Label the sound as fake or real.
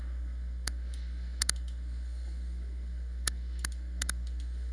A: fake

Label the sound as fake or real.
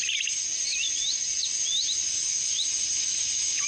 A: real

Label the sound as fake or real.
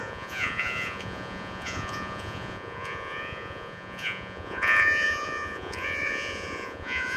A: fake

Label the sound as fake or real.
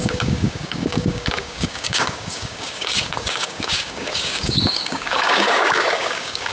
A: fake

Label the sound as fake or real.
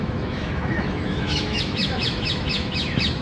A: fake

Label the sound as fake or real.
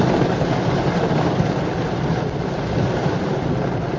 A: real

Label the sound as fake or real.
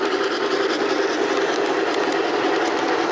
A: real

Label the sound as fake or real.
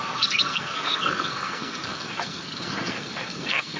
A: fake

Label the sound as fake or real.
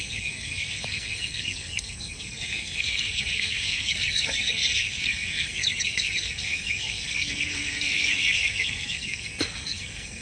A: fake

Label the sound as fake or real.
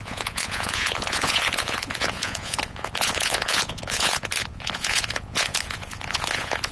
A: fake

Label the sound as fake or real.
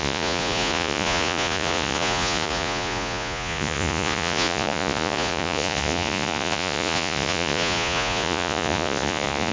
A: fake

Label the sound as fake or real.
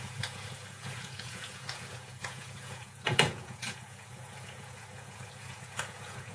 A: fake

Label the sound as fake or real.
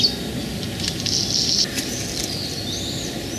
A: real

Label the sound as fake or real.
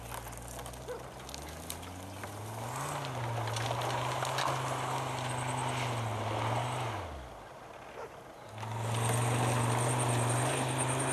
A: real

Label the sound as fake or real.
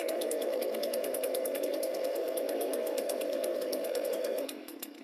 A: fake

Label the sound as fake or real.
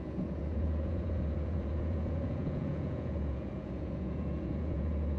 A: fake